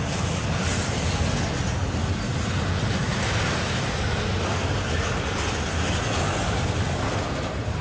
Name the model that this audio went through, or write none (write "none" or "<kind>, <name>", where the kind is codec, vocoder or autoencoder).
none